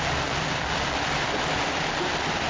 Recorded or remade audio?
recorded